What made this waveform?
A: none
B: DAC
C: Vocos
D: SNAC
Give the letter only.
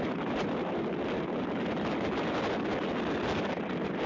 A